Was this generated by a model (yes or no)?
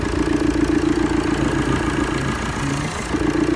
no